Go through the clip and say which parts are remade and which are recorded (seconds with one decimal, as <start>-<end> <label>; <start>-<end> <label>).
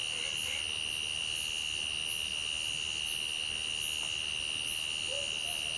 0.0-5.8 recorded